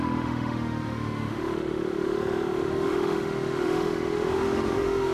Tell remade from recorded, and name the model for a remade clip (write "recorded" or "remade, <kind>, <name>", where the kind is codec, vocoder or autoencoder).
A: remade, autoencoder, DAC-VAE